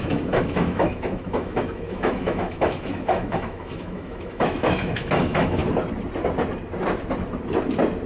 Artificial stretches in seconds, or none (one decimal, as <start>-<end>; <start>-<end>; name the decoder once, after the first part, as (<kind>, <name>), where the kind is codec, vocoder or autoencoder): 0.0-5.6 (autoencoder, DAC-VAE)